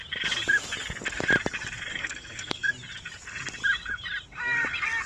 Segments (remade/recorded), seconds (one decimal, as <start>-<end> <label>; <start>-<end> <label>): 0.0-1.9 recorded; 1.9-2.7 remade; 2.7-5.1 recorded